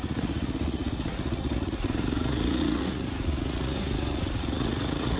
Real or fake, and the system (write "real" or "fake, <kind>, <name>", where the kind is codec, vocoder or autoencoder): fake, vocoder, Vocos